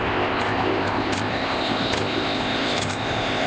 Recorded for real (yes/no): no